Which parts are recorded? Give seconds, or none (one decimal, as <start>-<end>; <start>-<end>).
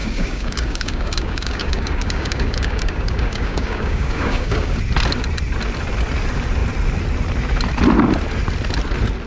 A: 4.8-9.3